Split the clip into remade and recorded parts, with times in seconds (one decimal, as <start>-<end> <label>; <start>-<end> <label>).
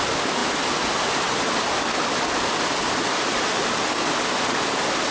0.0-5.1 recorded